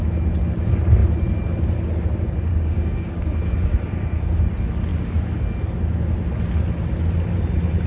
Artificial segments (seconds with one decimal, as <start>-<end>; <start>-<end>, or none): 2.5-3.3; 4.9-5.4